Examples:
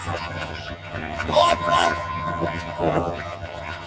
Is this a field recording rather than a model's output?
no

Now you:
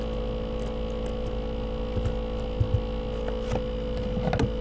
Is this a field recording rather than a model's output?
yes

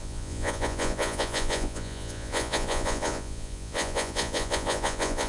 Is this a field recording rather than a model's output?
no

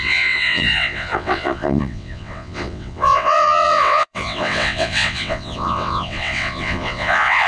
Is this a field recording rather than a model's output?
no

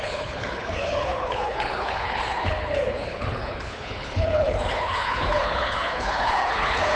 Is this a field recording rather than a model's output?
no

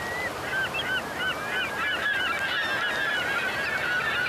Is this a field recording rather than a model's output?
yes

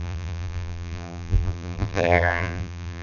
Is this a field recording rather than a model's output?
no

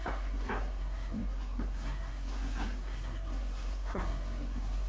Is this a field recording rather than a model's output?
no